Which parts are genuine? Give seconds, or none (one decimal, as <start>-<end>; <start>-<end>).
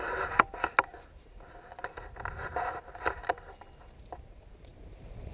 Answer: 0.0-5.3